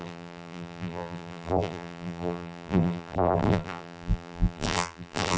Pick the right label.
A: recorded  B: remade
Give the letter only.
B